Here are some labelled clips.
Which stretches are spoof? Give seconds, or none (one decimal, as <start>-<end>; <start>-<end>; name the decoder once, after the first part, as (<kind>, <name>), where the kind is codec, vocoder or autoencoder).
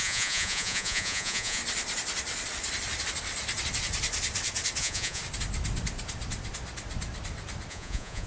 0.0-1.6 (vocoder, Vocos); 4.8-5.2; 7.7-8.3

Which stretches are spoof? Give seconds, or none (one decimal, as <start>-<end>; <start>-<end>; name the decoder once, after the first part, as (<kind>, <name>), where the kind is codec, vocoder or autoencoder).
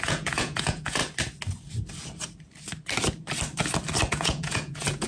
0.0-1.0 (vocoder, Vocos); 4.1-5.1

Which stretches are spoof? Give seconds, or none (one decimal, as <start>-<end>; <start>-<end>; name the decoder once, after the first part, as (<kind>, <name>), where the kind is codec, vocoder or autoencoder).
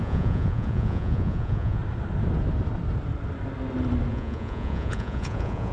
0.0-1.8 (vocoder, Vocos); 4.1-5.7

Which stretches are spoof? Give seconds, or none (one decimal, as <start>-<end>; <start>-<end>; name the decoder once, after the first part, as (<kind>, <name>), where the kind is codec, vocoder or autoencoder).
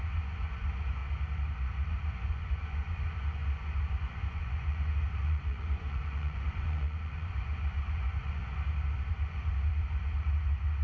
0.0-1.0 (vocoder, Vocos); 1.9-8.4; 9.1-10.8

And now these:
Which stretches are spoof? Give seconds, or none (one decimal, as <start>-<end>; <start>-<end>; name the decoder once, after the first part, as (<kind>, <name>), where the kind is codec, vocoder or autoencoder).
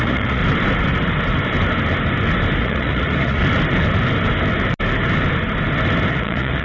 0.0-0.4 (vocoder, Vocos); 2.6-3.4; 6.1-6.6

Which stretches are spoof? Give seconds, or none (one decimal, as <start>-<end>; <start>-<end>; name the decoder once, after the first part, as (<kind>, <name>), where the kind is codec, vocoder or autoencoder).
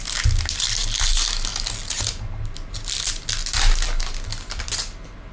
none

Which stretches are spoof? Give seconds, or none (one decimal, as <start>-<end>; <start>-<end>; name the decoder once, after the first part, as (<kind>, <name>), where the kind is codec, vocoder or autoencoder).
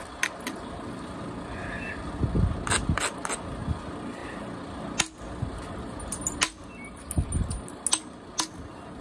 none